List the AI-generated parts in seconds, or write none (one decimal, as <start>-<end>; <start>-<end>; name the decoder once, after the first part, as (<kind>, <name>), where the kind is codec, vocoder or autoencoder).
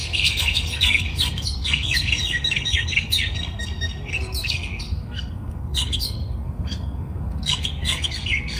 0.0-8.6 (codec, SNAC)